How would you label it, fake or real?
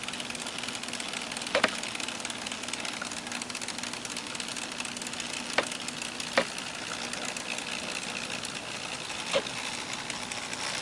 real